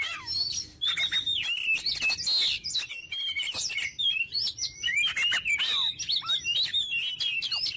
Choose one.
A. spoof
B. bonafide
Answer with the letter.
B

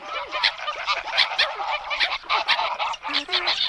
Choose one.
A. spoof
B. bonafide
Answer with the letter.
A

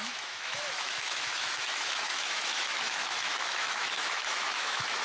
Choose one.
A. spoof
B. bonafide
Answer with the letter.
A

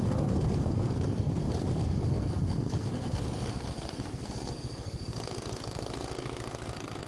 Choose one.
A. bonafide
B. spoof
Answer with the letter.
B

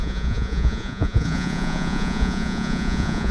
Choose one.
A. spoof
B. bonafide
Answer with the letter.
A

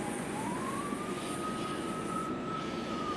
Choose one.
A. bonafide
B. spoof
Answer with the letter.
B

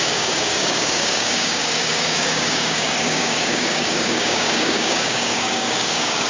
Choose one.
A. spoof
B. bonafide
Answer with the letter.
A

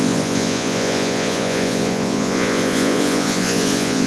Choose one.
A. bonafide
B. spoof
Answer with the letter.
B